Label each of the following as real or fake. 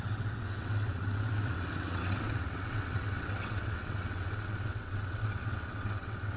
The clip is fake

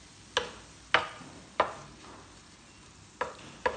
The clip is real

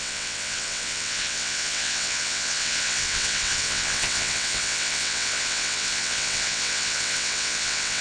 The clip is fake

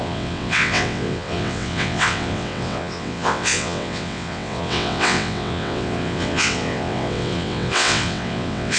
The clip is fake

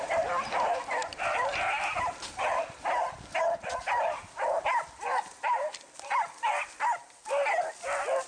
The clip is real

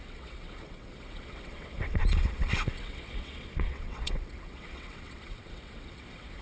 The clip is fake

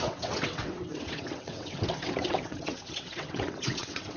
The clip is fake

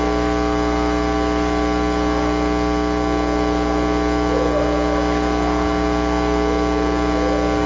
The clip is real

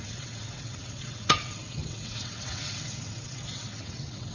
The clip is fake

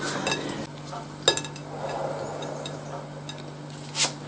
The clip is real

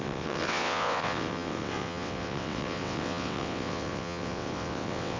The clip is fake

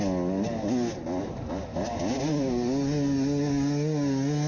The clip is real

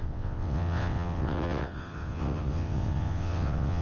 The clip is fake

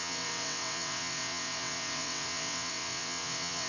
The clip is fake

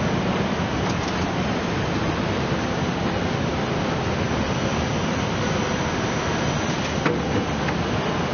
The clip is real